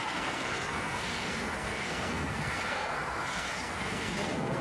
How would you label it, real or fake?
fake